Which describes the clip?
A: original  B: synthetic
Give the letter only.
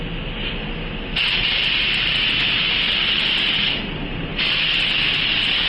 A